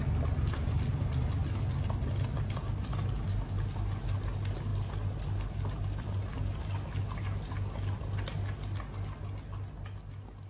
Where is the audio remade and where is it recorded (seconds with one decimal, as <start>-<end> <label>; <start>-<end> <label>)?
0.0-10.5 recorded

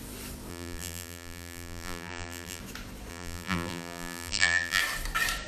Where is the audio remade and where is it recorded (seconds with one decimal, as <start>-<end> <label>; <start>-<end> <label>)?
0.0-0.5 recorded; 0.5-2.6 remade; 2.6-3.1 recorded; 3.1-4.8 remade; 4.8-5.5 recorded

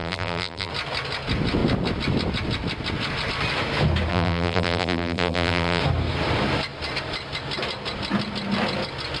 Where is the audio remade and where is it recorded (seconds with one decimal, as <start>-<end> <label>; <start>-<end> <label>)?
0.0-0.7 remade; 0.7-4.1 recorded; 4.1-5.8 remade; 5.8-9.2 recorded

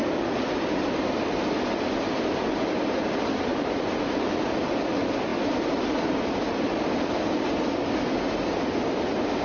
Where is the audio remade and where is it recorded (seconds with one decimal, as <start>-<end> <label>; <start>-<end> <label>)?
0.0-3.5 recorded; 3.5-4.3 remade; 4.3-9.4 recorded

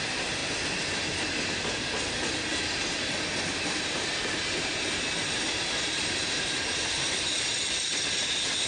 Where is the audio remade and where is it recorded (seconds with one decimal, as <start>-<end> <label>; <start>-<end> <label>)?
0.0-0.4 remade; 0.4-3.2 recorded; 3.2-8.7 remade

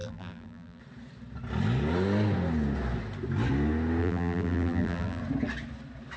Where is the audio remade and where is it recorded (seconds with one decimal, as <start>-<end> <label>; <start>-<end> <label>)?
0.0-0.8 remade; 0.8-4.0 recorded; 4.0-5.2 remade; 5.2-6.2 recorded

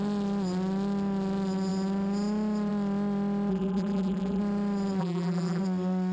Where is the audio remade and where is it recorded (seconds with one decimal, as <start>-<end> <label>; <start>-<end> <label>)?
0.0-3.5 recorded; 3.5-4.4 remade; 4.4-5.0 recorded; 5.0-5.6 remade; 5.6-6.1 recorded